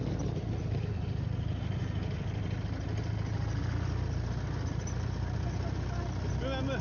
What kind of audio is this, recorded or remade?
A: recorded